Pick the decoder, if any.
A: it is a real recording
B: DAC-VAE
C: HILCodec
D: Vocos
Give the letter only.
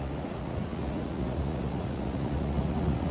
D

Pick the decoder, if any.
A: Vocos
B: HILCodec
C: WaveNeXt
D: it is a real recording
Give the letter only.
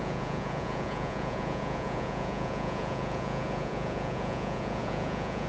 A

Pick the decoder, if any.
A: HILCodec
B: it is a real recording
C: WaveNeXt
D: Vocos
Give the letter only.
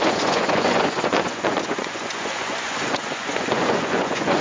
D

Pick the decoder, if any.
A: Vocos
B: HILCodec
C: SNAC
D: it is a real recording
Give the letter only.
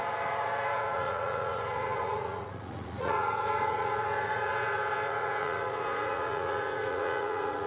A